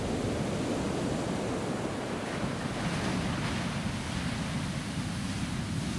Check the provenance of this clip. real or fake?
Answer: fake